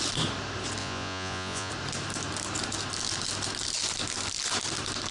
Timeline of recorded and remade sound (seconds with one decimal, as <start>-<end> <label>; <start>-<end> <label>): 0.0-0.8 recorded; 0.8-1.7 remade; 1.7-5.1 recorded